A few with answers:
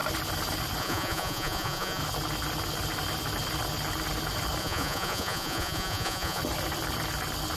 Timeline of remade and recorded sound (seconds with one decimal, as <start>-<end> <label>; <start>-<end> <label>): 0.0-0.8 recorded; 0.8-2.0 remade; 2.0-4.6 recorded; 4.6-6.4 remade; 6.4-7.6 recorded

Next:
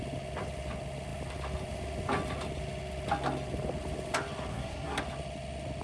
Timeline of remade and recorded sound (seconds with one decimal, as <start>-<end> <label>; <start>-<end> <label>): 0.0-4.5 recorded; 4.5-5.0 remade; 5.0-5.8 recorded

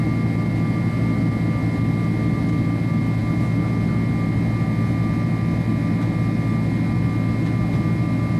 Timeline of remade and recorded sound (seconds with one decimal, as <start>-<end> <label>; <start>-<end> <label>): 0.0-8.4 recorded

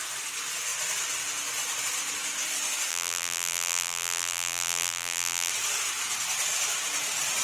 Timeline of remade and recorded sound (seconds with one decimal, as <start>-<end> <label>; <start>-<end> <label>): 0.0-2.9 recorded; 2.9-5.5 remade; 5.5-7.4 recorded